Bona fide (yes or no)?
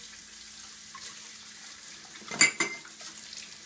yes